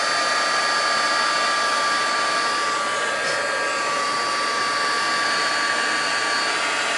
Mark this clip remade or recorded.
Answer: recorded